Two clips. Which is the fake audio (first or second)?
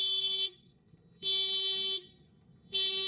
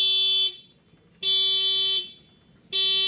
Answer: first